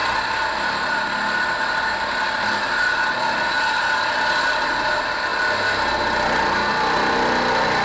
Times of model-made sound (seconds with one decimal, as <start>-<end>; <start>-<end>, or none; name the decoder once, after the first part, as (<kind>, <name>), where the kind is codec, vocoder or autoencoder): none